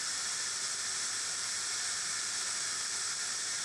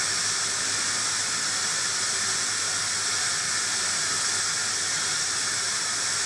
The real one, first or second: second